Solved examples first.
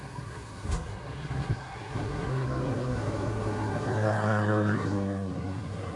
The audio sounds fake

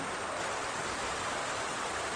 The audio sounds real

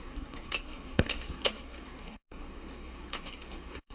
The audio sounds fake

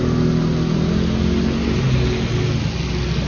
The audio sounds real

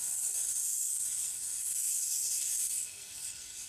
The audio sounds fake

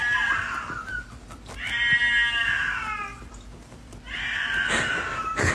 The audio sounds real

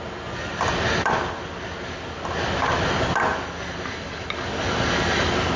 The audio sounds real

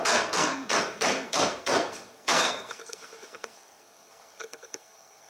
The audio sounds fake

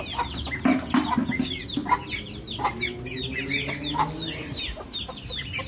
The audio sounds real